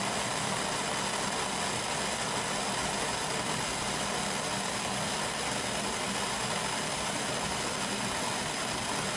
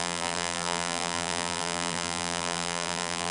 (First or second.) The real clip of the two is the first